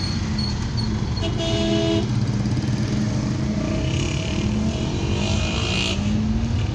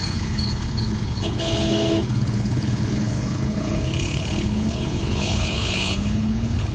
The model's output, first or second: second